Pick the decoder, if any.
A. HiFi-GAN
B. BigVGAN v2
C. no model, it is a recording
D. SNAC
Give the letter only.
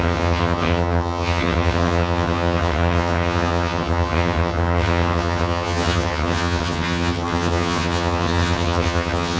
A